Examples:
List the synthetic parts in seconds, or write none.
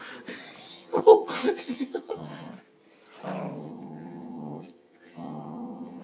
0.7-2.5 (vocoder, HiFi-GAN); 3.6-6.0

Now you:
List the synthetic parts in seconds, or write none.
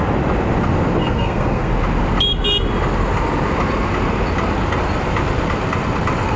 1.0-1.7 (codec, SNAC)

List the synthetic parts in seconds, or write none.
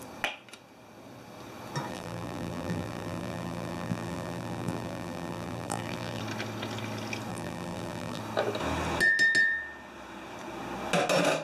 1.9-6.2 (vocoder, BigVGAN v2); 7.3-8.2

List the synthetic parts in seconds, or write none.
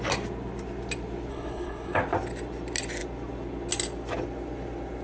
1.3-2.0 (codec, HILCodec)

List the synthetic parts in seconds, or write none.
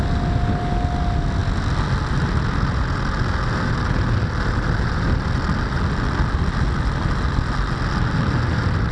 none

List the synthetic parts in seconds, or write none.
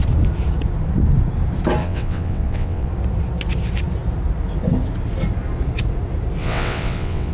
1.8-2.9 (vocoder, WaveNeXt); 6.4-7.3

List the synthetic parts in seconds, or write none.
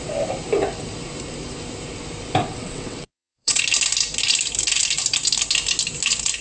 2.5-3.6 (vocoder, WaveNeXt)